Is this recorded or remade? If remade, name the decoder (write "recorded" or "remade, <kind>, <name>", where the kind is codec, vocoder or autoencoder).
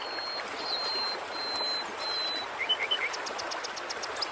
recorded